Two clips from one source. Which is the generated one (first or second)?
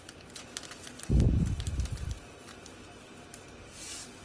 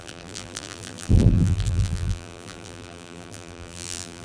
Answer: second